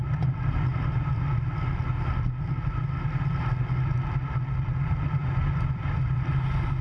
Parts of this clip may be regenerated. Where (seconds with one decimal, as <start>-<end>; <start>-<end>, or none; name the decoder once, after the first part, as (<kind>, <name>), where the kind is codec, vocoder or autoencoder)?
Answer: 5.2-6.3 (vocoder, BigVGAN v2)